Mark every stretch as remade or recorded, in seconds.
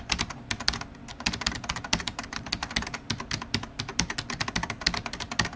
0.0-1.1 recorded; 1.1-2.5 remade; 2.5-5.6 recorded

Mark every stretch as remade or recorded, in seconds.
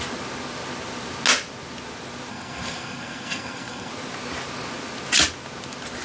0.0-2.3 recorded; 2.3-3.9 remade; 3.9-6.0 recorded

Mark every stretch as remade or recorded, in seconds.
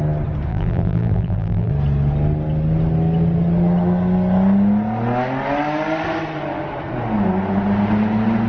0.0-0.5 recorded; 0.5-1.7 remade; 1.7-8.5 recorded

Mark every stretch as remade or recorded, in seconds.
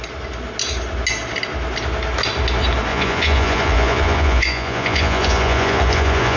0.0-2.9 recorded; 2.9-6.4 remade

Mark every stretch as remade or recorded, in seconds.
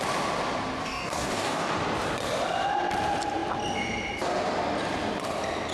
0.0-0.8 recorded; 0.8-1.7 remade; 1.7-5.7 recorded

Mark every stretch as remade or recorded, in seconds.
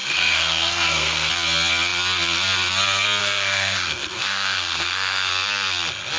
0.0-1.3 remade; 1.3-3.2 recorded; 3.2-5.3 remade; 5.3-6.2 recorded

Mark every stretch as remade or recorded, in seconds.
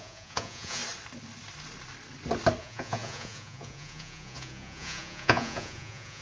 0.0-0.8 remade; 0.8-2.6 recorded; 2.6-6.2 remade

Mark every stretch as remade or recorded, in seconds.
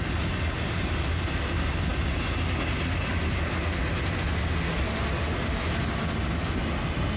0.0-7.2 recorded